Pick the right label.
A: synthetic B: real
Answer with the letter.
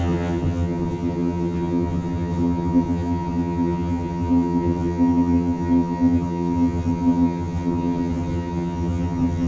A